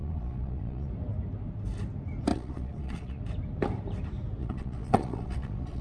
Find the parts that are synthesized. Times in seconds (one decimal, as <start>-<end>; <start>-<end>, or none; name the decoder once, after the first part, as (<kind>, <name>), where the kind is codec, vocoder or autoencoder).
0.0-0.9 (vocoder, Vocos); 2.3-3.2; 4.4-5.8